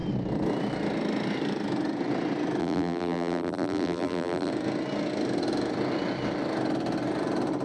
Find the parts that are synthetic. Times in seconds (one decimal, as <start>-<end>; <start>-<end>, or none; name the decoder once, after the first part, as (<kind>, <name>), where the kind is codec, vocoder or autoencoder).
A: 2.6-4.5 (vocoder, BigVGAN v2)